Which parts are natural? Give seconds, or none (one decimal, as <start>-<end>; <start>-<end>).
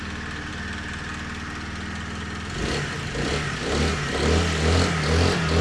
0.0-5.6